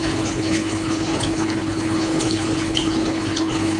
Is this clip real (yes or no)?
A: no